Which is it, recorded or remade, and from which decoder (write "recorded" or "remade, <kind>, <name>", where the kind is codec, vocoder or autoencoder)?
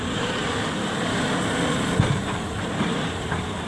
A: remade, vocoder, BigVGAN v2